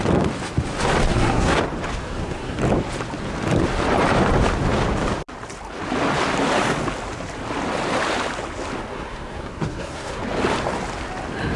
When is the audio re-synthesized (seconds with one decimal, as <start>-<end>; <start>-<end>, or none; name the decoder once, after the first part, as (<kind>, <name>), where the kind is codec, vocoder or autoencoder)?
1.1-1.6 (codec, SNAC); 2.0-2.6; 8.9-10.2